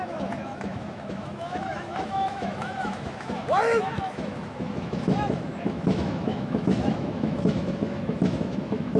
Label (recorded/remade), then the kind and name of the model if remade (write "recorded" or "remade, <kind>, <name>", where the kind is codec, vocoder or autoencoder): remade, autoencoder, DAC-VAE